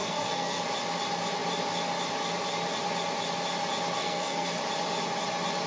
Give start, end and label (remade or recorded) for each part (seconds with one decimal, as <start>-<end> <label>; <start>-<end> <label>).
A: 0.0-0.6 remade; 0.6-4.0 recorded; 4.0-4.6 remade; 4.6-5.7 recorded